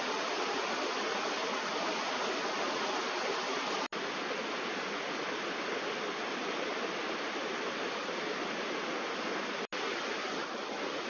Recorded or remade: recorded